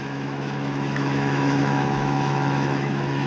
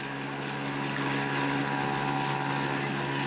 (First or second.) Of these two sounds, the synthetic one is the first